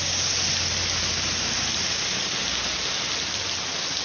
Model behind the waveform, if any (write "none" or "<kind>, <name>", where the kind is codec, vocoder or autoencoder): none